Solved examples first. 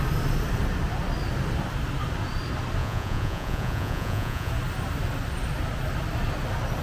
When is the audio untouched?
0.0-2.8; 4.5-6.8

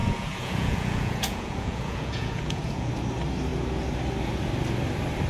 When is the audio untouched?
2.9-5.3

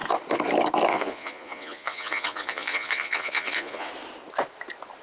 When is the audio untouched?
0.0-0.9; 3.9-5.0

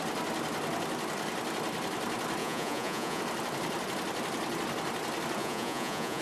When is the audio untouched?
0.0-2.4; 3.2-5.4

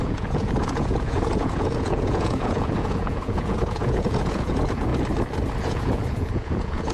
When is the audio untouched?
4.9-5.6

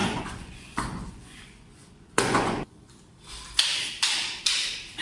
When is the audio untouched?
3.0-5.0

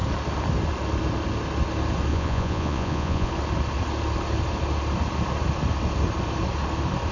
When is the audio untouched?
0.0-2.1; 3.3-7.1